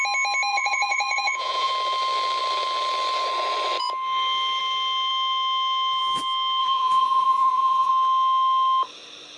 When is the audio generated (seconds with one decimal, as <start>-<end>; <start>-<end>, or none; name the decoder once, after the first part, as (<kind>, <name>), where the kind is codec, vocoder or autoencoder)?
0.5-1.7 (vocoder, Vocos); 6.6-7.9